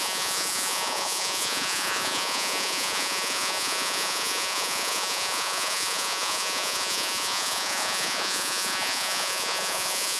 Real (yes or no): no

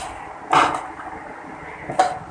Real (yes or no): yes